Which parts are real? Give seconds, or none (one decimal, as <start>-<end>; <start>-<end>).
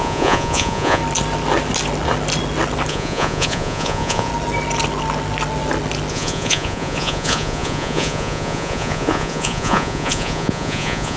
1.0-2.9; 4.3-6.1